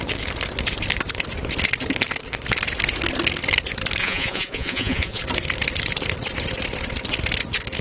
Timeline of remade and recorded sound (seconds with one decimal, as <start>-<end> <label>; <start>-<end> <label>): 0.0-4.0 recorded; 4.0-5.2 remade; 5.2-7.8 recorded